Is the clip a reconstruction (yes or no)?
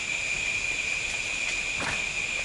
no